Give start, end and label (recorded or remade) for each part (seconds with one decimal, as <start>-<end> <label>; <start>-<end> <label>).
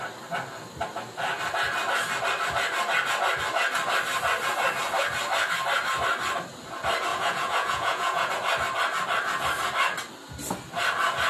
0.0-7.1 recorded; 7.1-8.3 remade; 8.3-11.3 recorded